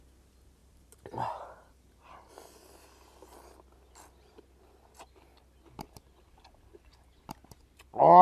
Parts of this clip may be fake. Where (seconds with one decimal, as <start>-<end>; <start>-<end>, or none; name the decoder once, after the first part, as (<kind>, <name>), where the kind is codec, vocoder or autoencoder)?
0.6-2.3 (vocoder, BigVGAN v2)